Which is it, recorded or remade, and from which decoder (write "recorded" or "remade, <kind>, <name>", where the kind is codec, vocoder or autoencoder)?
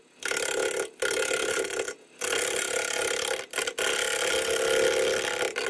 recorded